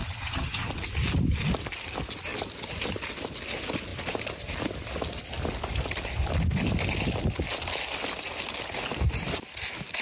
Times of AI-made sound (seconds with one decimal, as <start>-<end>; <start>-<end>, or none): 0.0-0.7